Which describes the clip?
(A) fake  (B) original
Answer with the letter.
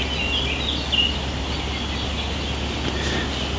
B